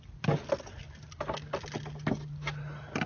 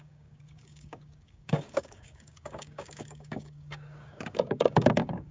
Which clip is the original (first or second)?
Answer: first